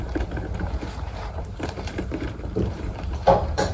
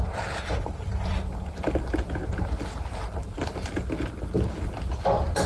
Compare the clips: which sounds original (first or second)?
second